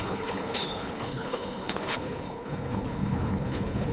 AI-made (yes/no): yes